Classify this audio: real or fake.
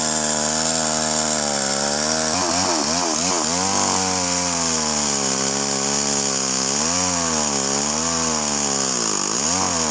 real